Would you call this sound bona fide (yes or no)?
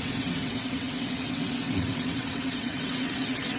no